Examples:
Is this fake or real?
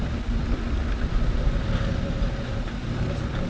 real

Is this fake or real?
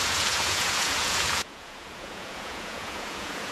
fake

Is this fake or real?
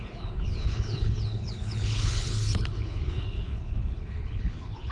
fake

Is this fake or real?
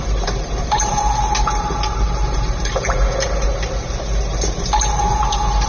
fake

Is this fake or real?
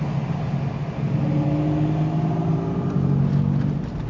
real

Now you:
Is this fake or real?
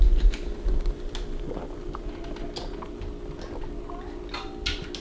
real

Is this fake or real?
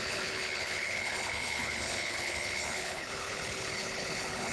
fake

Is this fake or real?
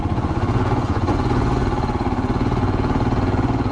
fake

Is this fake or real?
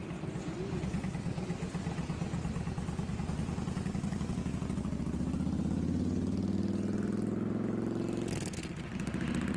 real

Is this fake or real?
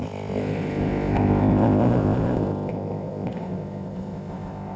fake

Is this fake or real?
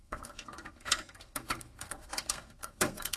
fake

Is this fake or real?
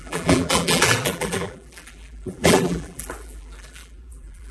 fake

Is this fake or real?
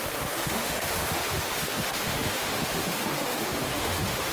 fake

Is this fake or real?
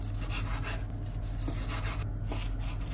real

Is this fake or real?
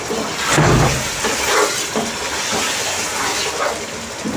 real